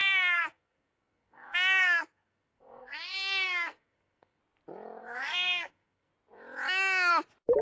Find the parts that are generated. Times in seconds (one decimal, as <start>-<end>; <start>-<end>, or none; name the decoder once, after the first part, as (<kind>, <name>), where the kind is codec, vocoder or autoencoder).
0.0-4.4 (codec, SNAC); 5.0-6.1